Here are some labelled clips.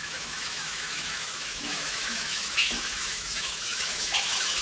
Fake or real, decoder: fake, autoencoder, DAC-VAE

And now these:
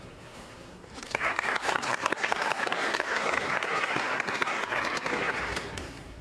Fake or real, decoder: fake, codec, SNAC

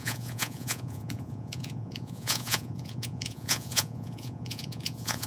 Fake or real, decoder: fake, vocoder, Vocos